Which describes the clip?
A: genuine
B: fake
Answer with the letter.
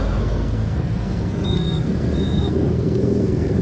B